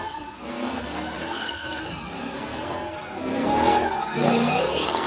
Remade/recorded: remade